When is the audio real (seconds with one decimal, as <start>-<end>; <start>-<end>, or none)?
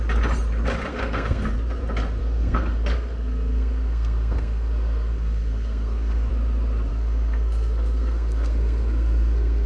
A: 0.0-0.9; 1.5-2.2; 6.3-6.9